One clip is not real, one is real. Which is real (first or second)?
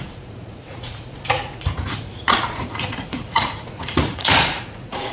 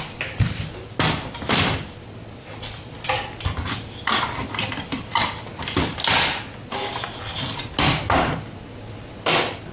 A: second